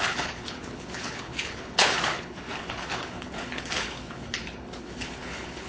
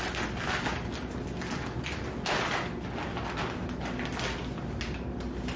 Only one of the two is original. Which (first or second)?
second